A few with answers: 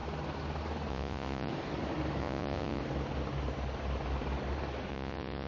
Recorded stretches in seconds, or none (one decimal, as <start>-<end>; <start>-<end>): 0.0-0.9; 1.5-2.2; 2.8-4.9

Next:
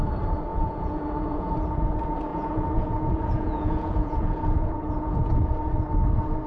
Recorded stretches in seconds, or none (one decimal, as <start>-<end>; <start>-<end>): 0.0-0.5; 1.5-2.3; 5.6-6.5

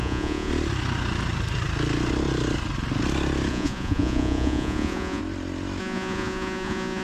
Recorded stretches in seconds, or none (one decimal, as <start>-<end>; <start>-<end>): 0.5-3.5; 5.2-5.8

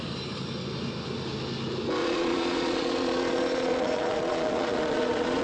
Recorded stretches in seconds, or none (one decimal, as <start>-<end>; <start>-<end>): 0.0-2.0